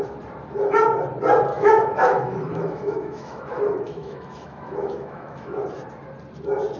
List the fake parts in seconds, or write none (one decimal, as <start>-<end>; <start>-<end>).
1.5-5.6